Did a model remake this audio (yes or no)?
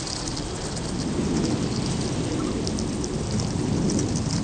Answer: no